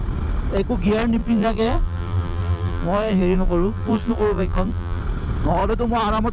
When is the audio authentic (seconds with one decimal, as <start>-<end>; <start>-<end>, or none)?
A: 0.0-1.2; 5.0-6.3